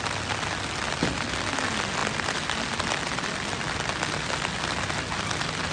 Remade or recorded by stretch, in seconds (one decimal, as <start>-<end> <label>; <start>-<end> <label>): 0.0-5.7 recorded